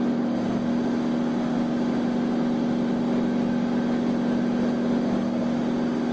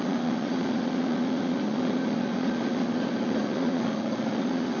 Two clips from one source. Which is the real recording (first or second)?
first